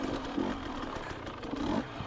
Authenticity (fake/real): fake